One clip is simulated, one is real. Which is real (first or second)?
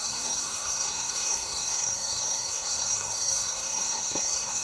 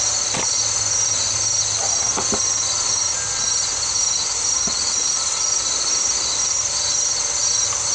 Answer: second